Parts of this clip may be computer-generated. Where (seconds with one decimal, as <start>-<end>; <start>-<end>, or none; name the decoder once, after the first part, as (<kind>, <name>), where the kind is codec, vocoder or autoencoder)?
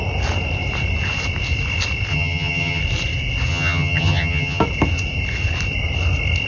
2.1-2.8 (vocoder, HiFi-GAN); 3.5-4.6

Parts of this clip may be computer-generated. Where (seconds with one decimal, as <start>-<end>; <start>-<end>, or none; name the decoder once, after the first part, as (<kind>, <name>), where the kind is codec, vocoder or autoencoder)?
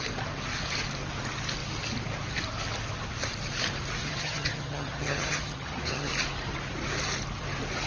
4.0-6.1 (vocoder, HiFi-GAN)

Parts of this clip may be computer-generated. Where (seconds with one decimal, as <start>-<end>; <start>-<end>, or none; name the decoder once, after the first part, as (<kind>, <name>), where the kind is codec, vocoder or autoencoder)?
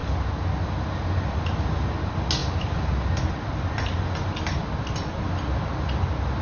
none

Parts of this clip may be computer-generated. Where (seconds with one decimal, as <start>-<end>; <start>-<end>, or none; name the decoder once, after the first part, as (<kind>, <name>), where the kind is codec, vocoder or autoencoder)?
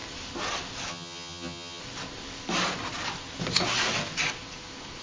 0.9-1.8 (vocoder, HiFi-GAN)